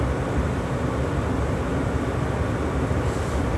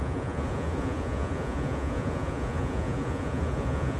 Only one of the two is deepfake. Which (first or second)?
second